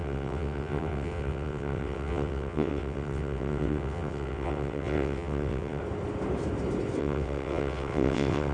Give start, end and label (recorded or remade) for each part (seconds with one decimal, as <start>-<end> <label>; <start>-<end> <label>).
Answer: 0.0-5.8 remade; 5.8-7.0 recorded; 7.0-8.5 remade